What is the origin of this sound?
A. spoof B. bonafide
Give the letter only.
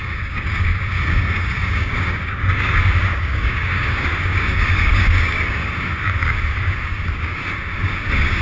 A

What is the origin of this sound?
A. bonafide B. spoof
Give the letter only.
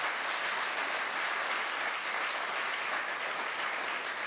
A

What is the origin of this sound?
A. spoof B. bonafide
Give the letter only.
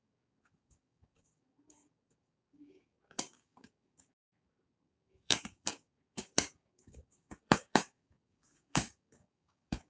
A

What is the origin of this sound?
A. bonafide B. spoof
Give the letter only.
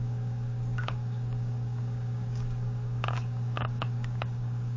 B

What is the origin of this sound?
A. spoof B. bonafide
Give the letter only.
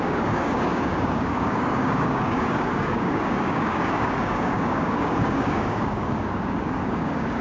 A